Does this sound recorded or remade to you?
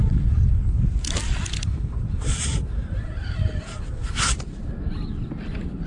recorded